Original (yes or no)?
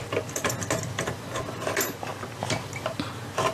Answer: yes